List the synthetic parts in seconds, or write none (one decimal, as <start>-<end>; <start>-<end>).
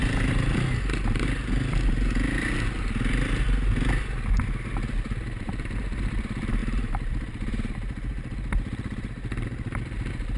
5.2-10.4